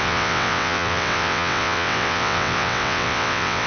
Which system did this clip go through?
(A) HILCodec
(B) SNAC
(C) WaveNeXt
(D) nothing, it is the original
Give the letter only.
C